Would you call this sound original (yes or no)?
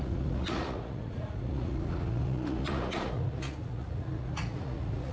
no